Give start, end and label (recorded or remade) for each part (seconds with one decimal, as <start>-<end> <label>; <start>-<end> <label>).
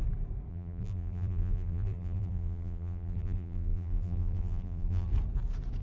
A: 0.0-0.5 recorded; 0.5-5.1 remade; 5.1-5.8 recorded